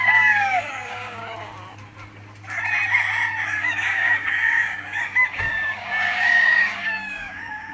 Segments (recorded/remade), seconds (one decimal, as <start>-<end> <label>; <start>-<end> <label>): 0.0-1.2 remade; 1.2-3.6 recorded; 3.6-7.7 remade